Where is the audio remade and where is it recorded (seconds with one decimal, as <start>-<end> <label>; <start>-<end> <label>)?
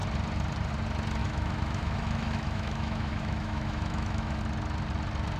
0.0-1.2 recorded; 1.2-4.4 remade; 4.4-5.4 recorded